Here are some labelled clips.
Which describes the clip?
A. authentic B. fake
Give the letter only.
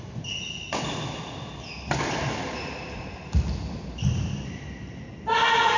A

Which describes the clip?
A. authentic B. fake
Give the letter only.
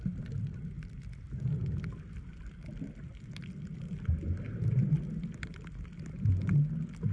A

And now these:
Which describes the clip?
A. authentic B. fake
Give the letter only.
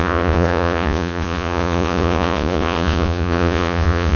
B